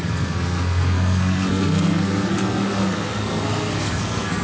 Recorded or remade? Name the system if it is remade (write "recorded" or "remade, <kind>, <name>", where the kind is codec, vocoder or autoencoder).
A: remade, codec, SNAC